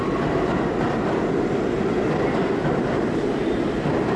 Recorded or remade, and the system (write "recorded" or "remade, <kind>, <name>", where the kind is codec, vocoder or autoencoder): recorded